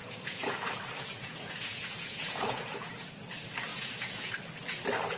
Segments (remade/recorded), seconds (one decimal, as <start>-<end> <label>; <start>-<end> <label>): 0.0-3.1 remade; 3.1-3.7 recorded; 3.7-4.3 remade; 4.3-5.2 recorded